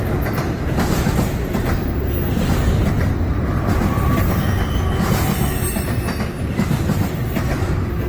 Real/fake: real